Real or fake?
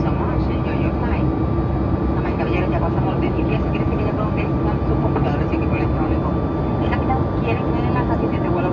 real